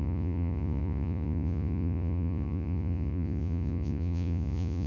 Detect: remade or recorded remade